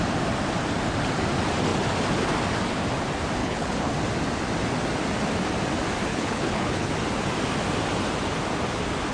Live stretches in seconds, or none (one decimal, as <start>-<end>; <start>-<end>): 0.0-3.4; 3.9-6.1; 6.9-9.1